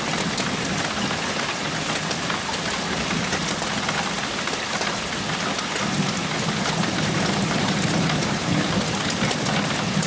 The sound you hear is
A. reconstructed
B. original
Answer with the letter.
B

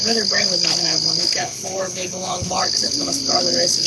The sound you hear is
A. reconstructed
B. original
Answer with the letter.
A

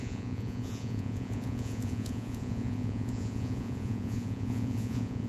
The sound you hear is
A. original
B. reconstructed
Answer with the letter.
B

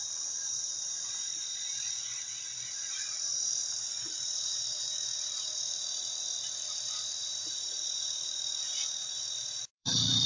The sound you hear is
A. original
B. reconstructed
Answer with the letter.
B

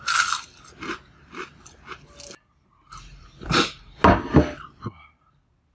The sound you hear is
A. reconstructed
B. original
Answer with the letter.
B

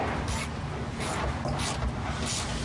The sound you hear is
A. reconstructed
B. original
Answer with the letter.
B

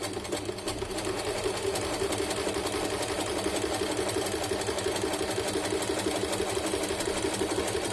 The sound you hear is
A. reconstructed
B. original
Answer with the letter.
B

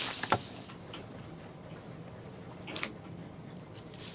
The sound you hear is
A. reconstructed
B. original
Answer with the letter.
B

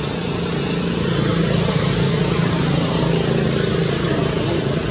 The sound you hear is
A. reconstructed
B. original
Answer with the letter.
B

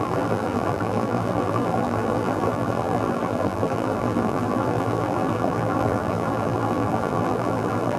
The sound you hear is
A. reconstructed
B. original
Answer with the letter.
A